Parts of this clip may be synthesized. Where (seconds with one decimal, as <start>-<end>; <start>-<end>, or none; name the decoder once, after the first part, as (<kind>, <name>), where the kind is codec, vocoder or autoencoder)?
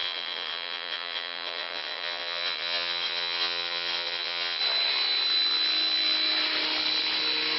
0.0-4.6 (vocoder, WaveNeXt)